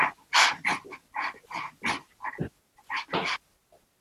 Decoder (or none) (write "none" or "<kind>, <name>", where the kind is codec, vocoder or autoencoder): none